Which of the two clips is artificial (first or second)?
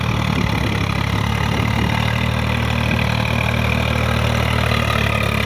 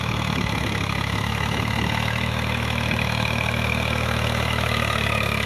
second